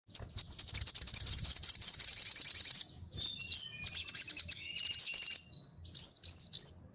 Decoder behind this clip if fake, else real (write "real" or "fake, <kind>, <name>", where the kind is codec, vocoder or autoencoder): real